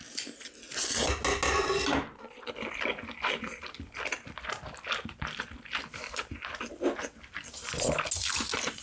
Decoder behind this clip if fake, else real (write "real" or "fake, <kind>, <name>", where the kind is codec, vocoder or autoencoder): real